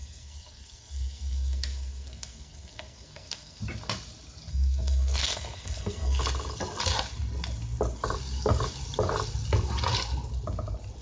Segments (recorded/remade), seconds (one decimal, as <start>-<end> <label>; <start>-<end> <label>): 0.0-3.6 remade; 3.6-4.5 recorded; 4.5-6.2 remade; 6.2-11.0 recorded